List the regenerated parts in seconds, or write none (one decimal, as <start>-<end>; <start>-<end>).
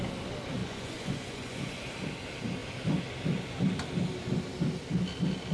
0.6-1.9